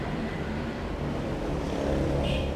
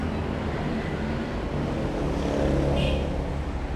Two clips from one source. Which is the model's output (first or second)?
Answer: first